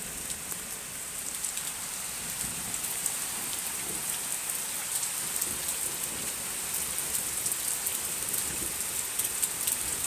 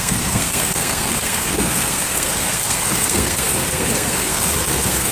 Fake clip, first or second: second